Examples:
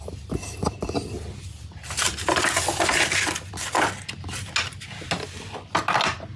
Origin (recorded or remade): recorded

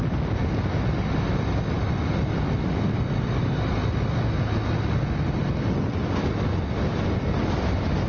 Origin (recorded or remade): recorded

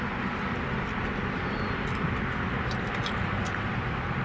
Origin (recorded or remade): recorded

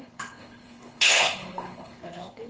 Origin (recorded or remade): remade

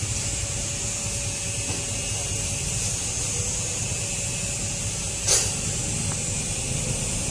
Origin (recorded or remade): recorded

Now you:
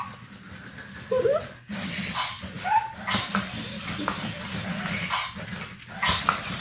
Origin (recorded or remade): recorded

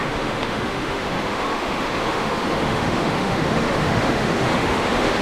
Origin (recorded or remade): remade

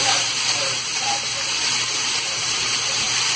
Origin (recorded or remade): remade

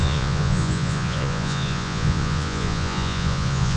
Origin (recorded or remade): remade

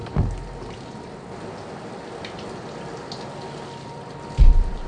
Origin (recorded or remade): recorded